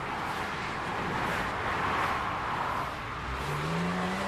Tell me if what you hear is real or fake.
real